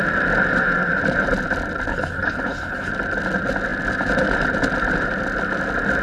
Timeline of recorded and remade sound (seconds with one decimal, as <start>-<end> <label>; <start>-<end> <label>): 0.0-1.9 recorded; 1.9-2.9 remade; 2.9-6.0 recorded